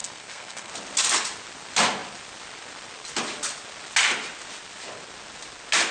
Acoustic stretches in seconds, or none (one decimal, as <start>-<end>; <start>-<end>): 0.7-5.9